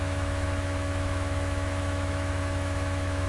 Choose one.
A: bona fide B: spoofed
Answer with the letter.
B